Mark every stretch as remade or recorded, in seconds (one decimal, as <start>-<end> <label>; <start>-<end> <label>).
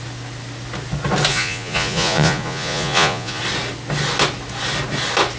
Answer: 0.0-1.3 recorded; 1.3-3.4 remade; 3.4-5.4 recorded